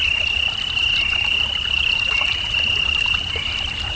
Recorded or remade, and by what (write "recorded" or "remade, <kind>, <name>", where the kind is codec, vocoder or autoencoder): recorded